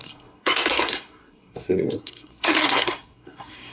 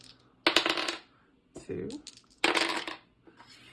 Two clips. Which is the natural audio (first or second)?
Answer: second